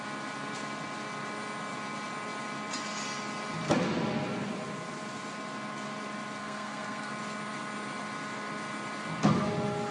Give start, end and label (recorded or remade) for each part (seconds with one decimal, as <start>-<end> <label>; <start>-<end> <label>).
0.0-6.4 recorded; 6.4-7.1 remade; 7.1-9.9 recorded